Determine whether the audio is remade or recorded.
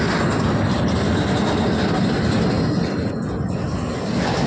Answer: recorded